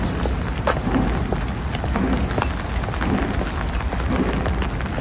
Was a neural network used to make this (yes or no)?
no